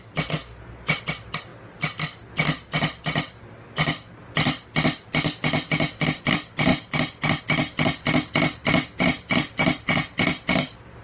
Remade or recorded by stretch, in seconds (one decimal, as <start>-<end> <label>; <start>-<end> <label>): 0.0-11.0 recorded